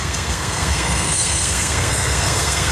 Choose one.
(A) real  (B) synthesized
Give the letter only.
B